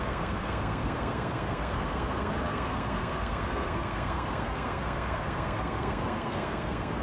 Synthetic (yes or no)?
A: yes